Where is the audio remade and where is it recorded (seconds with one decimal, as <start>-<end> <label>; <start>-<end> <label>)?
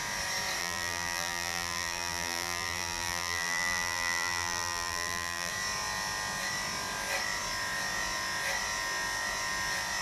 0.0-0.6 recorded; 0.6-5.5 remade; 5.5-10.0 recorded